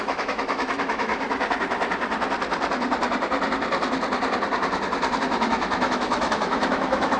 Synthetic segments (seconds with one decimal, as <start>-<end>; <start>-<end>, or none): 0.0-1.1; 5.2-7.2